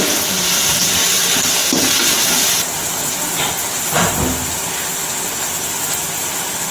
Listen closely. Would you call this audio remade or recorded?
recorded